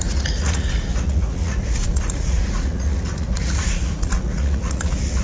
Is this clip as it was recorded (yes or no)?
no